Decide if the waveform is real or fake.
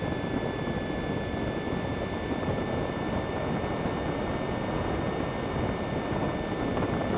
real